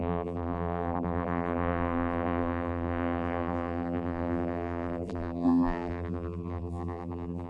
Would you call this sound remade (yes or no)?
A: yes